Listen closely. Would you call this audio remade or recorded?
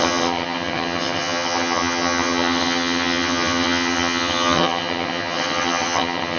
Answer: remade